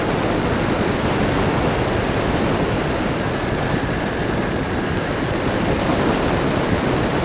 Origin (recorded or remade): recorded